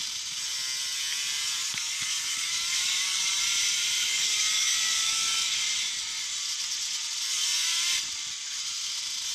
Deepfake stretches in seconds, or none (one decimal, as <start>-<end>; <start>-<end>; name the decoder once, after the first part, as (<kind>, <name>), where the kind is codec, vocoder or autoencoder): 1.6-3.4 (codec, DAC); 4.0-5.6